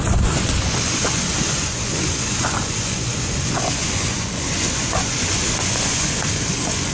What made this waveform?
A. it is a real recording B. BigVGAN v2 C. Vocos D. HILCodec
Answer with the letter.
C